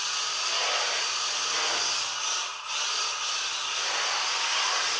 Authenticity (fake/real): real